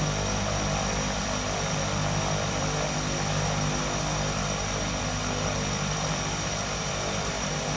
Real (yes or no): no